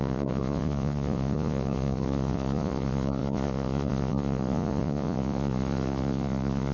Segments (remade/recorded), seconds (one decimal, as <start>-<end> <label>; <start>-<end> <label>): 0.0-6.7 remade